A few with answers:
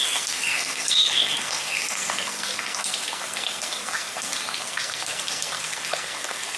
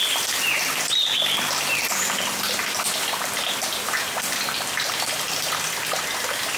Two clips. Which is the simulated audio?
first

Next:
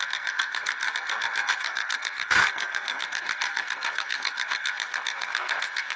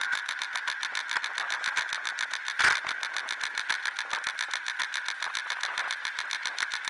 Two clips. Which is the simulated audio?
first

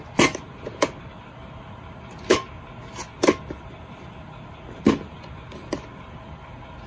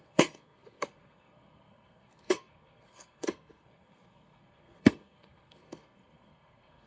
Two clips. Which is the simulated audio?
second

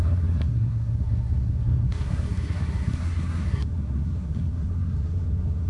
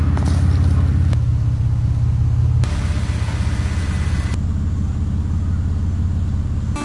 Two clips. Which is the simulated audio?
first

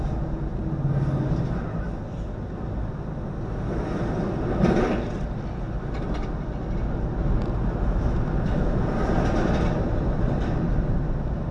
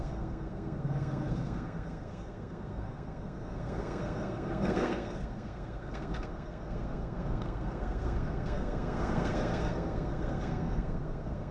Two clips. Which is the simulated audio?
second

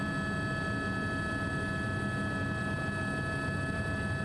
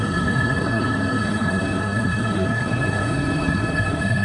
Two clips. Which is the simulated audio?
second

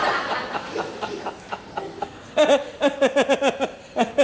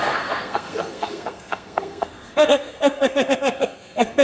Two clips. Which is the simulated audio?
second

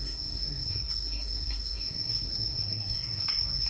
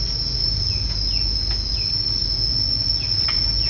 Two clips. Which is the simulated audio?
first